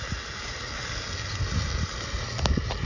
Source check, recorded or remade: recorded